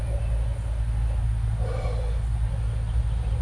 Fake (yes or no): no